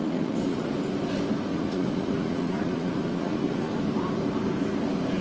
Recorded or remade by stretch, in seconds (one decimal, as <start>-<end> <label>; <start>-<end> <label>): 0.0-0.7 remade; 0.7-1.5 recorded; 1.5-3.8 remade; 3.8-5.2 recorded